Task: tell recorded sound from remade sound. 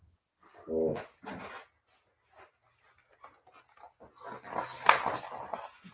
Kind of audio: recorded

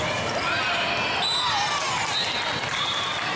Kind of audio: recorded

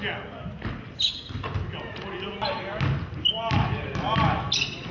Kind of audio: recorded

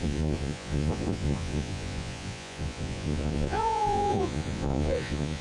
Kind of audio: remade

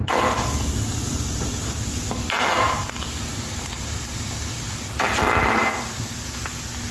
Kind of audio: recorded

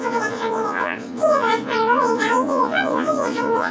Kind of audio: remade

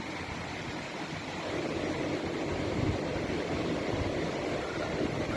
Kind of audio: recorded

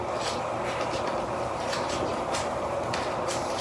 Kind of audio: recorded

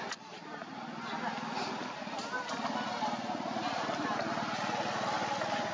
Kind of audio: recorded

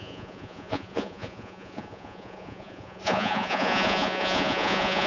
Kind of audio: remade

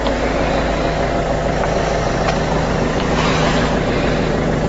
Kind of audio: recorded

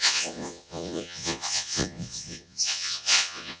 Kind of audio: remade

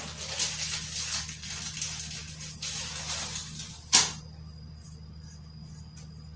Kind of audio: recorded